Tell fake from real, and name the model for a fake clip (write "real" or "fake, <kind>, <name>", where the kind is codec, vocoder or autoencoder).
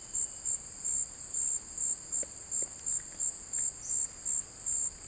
real